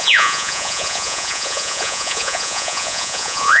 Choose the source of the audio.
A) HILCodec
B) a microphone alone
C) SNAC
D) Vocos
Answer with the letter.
D